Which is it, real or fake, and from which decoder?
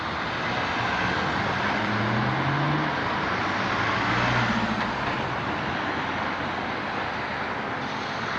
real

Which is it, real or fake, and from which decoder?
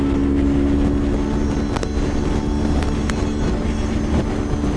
real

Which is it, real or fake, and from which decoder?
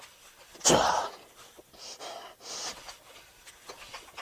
real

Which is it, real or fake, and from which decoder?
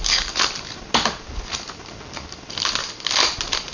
real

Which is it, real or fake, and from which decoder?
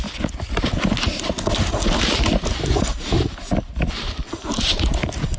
real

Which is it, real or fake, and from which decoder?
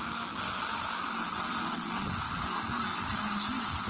real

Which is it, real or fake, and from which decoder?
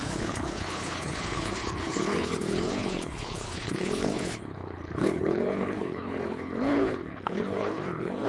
fake, codec, HILCodec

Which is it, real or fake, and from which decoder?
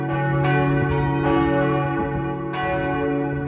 real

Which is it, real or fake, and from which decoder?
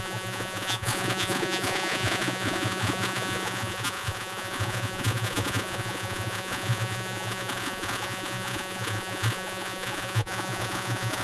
fake, vocoder, Vocos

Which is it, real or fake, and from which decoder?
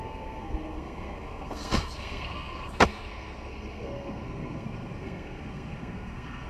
fake, codec, SNAC